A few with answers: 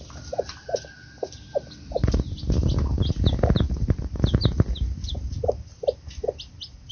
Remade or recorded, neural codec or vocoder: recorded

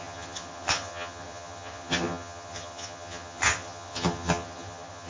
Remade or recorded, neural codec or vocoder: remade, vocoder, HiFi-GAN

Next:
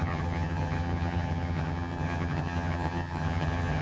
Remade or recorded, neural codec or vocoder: remade, vocoder, HiFi-GAN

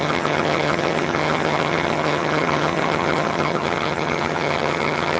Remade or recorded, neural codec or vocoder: remade, vocoder, HiFi-GAN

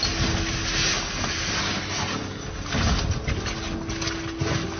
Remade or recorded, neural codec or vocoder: recorded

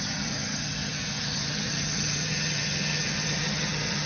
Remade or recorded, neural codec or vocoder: remade, vocoder, HiFi-GAN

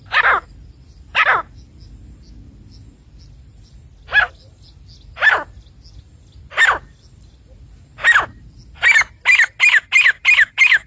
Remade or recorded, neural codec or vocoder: recorded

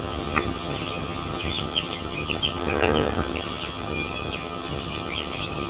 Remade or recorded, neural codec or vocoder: remade, vocoder, HiFi-GAN